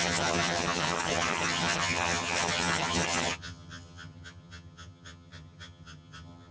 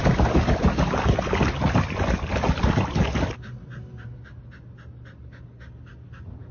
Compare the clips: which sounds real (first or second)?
second